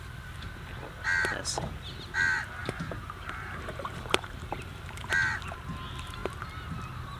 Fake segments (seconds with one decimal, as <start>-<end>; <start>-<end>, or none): 2.6-5.1